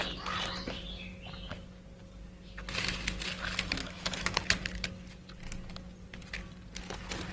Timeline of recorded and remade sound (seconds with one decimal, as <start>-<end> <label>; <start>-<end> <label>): 0.0-3.8 recorded; 3.8-4.4 remade; 4.4-7.3 recorded